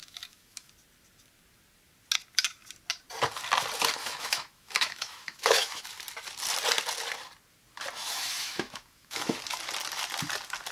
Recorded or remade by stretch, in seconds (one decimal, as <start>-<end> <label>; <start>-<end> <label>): 0.0-0.7 remade; 0.7-4.0 recorded; 4.0-5.9 remade; 5.9-8.0 recorded; 8.0-9.4 remade; 9.4-10.7 recorded